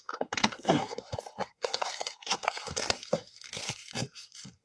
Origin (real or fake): fake